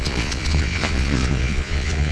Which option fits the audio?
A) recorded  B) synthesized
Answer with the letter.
B